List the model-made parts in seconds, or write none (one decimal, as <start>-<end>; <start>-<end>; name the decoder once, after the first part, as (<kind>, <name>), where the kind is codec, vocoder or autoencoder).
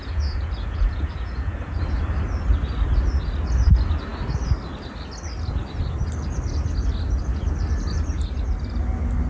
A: 0.0-1.8 (vocoder, Vocos)